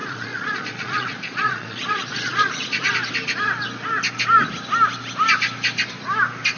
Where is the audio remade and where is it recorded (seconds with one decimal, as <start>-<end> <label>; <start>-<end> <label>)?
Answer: 0.0-2.9 remade; 2.9-6.6 recorded